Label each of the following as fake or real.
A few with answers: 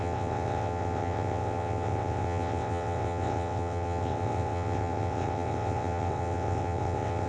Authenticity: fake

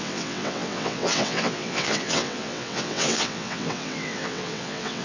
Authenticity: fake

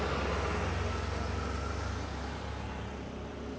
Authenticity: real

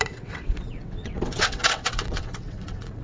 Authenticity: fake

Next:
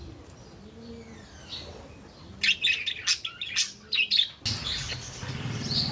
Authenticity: real